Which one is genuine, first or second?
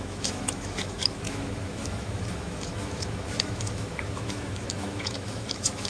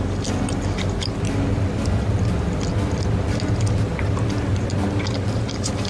second